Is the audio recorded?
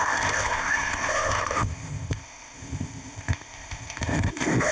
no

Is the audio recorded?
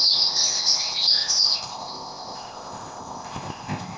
no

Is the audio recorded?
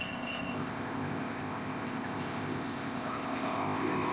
no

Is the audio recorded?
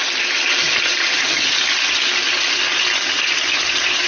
yes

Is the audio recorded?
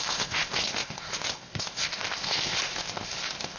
no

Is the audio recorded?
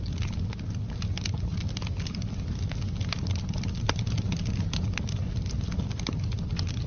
yes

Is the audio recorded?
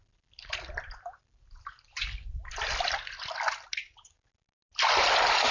yes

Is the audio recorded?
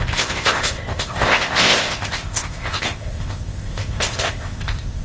no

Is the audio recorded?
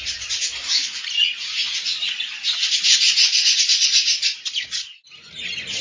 yes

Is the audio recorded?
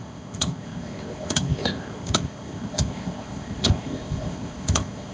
no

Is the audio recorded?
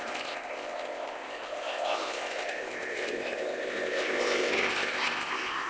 no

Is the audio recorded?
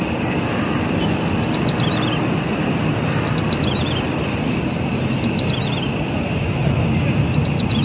yes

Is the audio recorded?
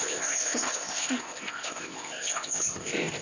no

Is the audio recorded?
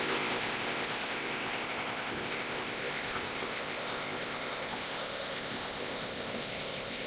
no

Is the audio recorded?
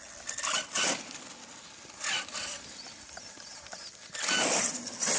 yes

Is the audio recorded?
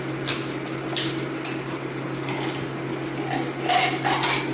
yes